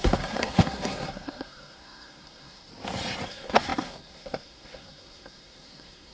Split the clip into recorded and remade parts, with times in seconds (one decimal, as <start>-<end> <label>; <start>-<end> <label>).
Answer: 0.0-2.7 remade; 2.7-3.3 recorded; 3.3-6.1 remade